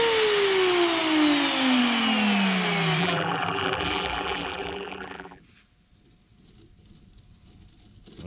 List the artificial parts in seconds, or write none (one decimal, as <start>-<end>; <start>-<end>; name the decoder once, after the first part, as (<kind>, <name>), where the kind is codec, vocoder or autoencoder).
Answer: 3.0-5.4 (vocoder, BigVGAN v2)